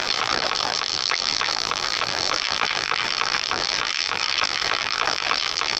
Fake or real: fake